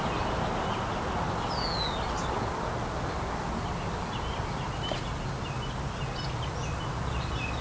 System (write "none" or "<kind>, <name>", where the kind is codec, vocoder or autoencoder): none